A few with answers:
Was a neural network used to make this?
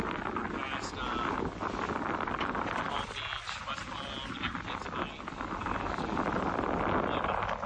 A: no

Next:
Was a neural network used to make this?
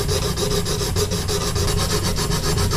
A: no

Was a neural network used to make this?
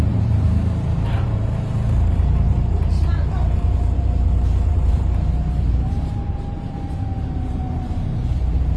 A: yes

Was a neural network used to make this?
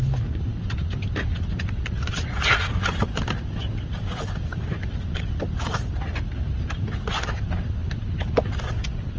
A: no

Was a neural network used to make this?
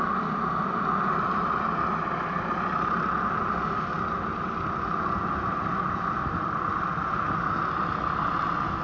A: no